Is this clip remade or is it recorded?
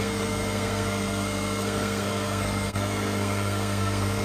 remade